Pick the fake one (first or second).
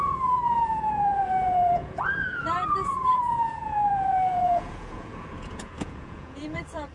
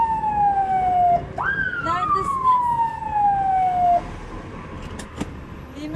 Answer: first